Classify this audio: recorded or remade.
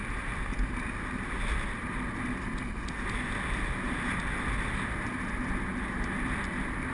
recorded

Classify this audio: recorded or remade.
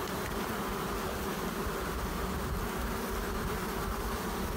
recorded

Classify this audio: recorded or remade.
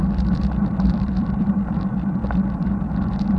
remade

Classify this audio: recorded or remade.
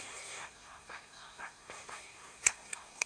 remade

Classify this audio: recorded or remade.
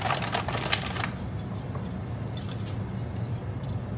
recorded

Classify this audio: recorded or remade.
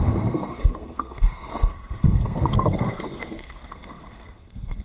remade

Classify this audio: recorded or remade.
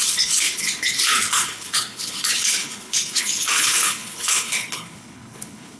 remade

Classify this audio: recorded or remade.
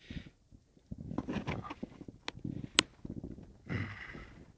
recorded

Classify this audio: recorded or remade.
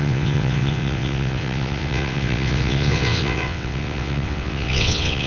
remade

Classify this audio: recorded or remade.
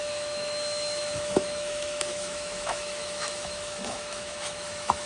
remade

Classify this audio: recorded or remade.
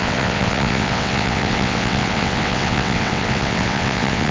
remade